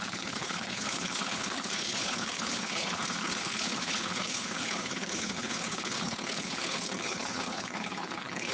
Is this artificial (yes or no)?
yes